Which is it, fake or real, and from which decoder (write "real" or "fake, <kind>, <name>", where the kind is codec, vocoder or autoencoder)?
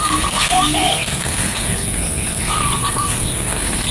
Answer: fake, codec, SNAC